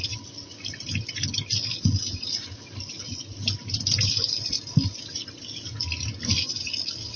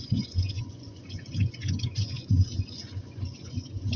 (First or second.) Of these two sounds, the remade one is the second